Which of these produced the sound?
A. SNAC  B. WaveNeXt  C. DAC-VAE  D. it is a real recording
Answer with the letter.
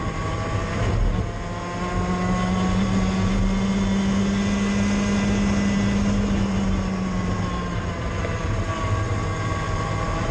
D